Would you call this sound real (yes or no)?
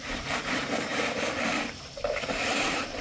no